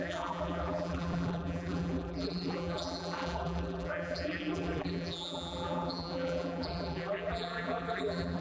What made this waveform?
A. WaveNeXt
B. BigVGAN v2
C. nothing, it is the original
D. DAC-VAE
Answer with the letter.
B